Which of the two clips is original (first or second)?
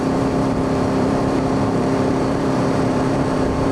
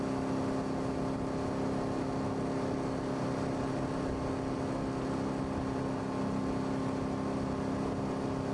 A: second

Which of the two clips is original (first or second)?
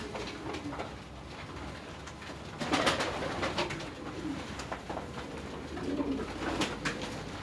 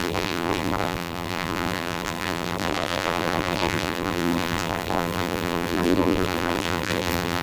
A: first